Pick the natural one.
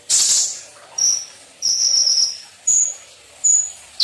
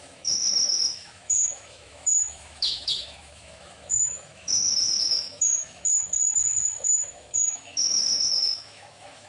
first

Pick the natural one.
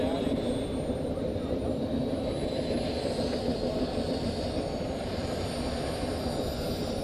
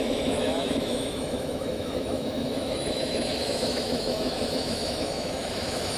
first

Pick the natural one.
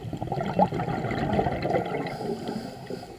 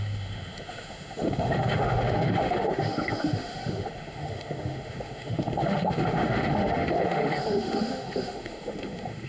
first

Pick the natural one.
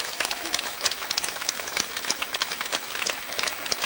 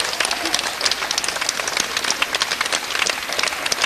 second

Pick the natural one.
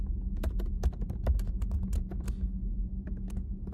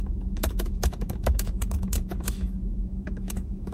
first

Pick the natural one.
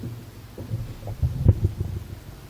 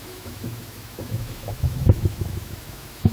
first